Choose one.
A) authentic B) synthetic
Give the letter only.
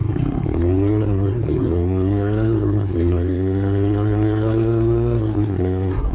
B